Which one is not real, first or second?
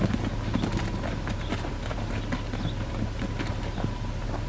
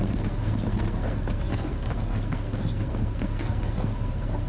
second